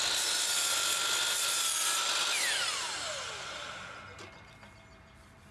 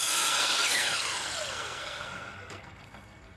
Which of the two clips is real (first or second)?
first